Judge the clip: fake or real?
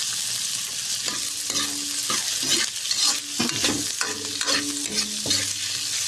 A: real